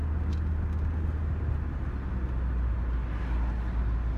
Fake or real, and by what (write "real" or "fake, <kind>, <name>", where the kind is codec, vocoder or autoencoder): real